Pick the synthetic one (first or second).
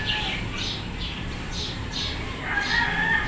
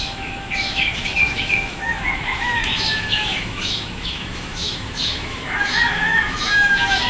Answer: second